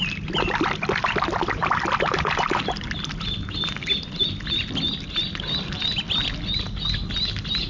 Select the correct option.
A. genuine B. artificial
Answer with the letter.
A